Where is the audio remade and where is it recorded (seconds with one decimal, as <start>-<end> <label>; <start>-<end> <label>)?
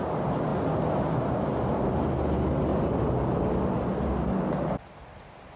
0.0-2.7 recorded; 2.7-3.4 remade; 3.4-5.6 recorded